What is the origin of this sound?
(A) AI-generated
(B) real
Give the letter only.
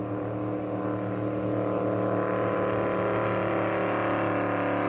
B